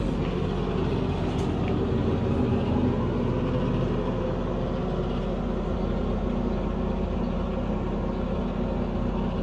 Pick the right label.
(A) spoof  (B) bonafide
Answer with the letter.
B